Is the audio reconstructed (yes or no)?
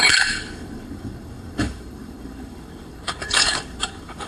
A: yes